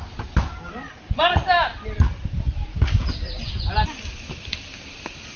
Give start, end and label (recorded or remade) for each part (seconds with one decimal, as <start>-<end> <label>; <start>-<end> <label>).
0.0-5.4 recorded